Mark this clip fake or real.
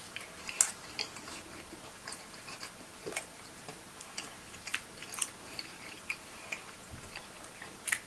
fake